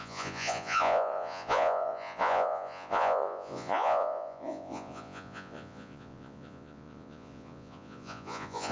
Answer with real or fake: fake